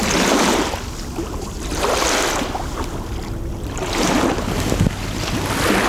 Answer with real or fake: real